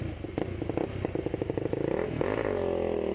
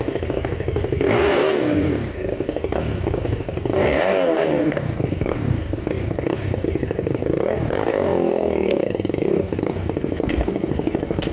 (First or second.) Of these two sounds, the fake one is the second